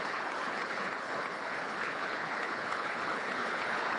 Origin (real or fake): fake